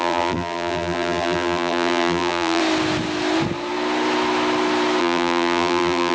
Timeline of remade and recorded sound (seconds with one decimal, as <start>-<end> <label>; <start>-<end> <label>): 0.0-2.6 remade; 2.6-5.0 recorded; 5.0-6.1 remade